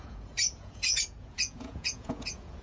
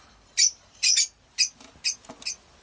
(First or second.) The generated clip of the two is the first